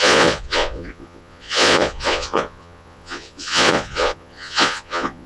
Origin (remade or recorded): remade